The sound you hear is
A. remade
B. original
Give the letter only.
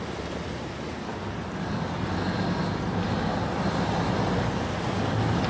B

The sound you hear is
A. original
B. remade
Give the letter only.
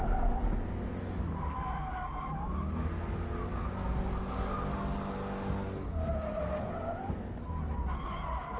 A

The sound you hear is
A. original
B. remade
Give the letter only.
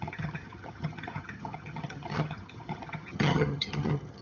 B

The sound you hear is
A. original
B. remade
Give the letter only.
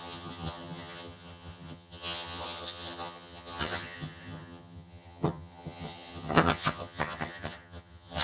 B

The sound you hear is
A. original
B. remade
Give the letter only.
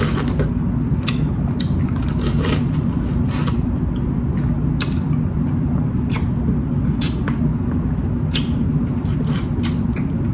A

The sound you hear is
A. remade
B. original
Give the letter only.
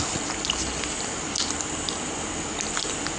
B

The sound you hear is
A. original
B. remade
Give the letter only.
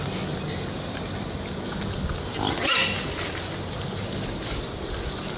A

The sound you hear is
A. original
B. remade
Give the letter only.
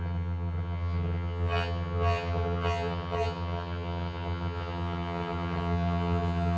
B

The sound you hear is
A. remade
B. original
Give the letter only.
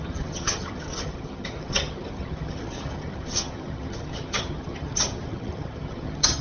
A